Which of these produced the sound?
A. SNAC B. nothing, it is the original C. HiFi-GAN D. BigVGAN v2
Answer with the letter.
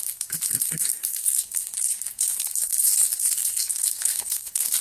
A